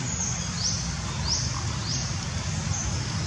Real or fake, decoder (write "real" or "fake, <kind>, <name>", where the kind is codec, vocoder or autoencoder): real